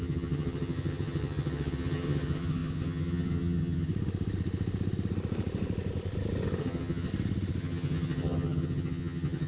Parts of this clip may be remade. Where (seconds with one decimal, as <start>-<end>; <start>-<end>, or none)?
0.0-3.9; 6.6-7.1; 7.6-9.5